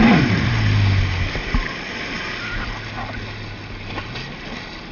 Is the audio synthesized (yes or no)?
no